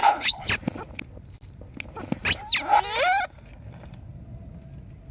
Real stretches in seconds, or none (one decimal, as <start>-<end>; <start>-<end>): 0.5-5.1